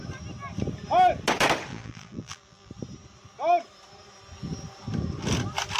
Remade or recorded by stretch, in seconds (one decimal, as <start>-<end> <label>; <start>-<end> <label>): 0.0-1.7 recorded; 1.7-2.7 remade; 2.7-5.8 recorded